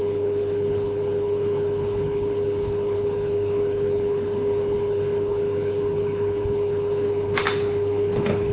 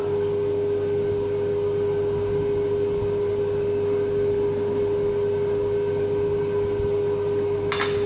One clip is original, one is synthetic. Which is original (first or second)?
second